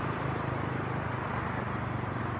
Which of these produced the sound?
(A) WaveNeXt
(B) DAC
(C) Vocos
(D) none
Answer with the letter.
D